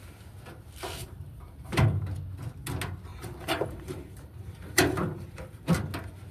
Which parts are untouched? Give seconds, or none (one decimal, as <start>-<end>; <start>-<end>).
0.0-1.0; 1.8-3.1; 5.8-6.3